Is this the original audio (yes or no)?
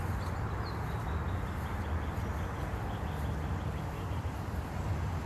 yes